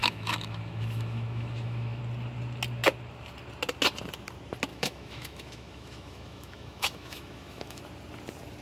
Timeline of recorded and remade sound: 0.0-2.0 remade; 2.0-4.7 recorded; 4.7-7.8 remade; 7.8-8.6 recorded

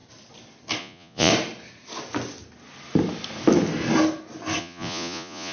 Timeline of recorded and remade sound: 0.0-0.8 recorded; 0.8-1.3 remade; 1.3-4.6 recorded; 4.6-5.5 remade